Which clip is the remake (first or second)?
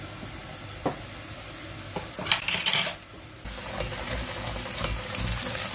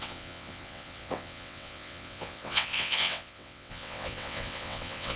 second